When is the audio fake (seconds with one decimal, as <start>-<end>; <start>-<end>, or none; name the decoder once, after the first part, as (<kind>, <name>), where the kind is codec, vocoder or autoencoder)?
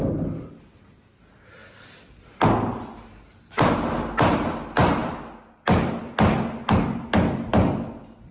none